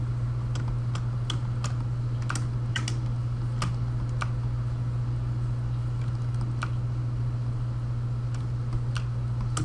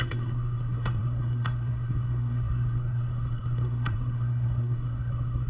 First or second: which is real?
first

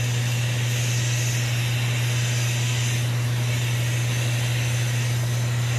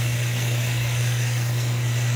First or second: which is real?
first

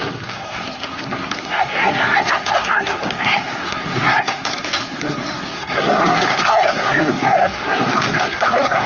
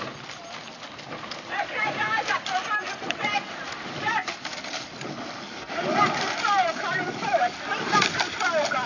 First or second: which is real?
second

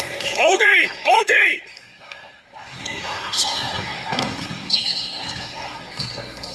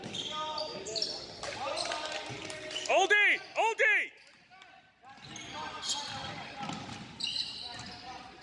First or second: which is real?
second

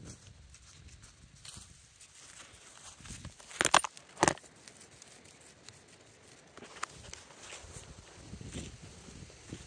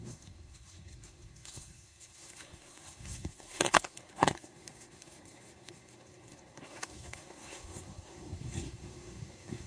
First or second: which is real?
first